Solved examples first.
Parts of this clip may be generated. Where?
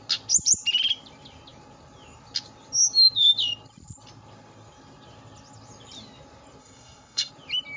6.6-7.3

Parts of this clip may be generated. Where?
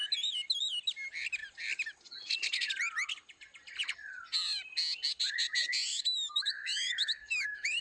5.9-7.8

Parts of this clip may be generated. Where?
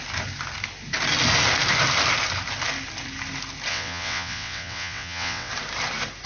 3.7-5.5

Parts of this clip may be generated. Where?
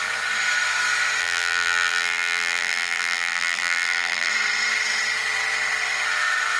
1.2-4.3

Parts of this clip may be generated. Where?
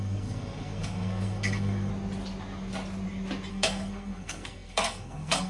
0.0-1.9; 3.5-5.5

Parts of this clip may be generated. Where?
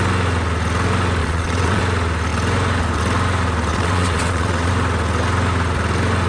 1.2-1.8; 3.7-4.7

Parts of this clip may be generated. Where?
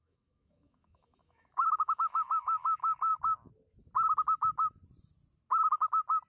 0.0-3.1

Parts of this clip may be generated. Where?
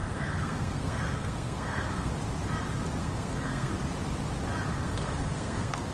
0.0-2.1; 3.0-3.7; 4.7-5.9